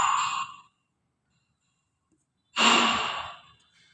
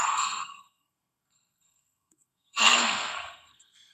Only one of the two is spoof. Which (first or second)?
second